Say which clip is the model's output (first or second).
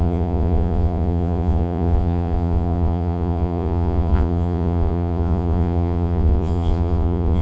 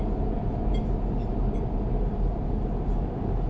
first